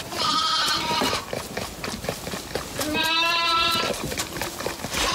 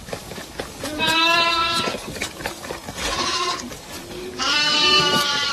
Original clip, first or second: first